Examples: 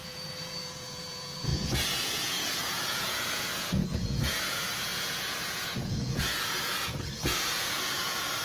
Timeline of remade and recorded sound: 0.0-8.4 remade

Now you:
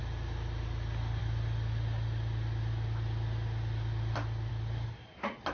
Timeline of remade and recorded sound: 0.0-5.5 recorded

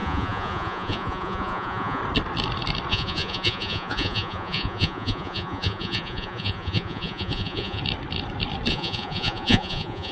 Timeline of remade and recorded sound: 0.0-2.0 remade; 2.0-2.9 recorded; 2.9-7.8 remade; 7.8-8.7 recorded; 8.7-10.1 remade

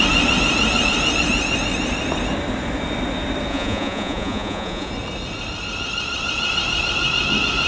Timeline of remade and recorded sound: 0.0-3.5 recorded; 3.5-4.9 remade; 4.9-7.7 recorded

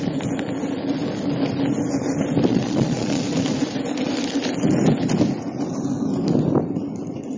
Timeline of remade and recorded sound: 0.0-2.5 recorded; 2.5-3.2 remade; 3.2-7.4 recorded

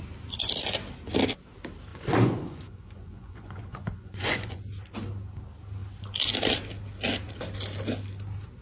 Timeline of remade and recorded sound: 0.0-1.9 recorded; 1.9-4.6 remade; 4.6-8.6 recorded